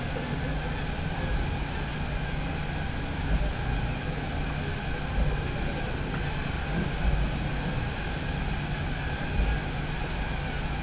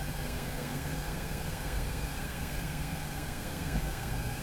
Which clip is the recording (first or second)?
first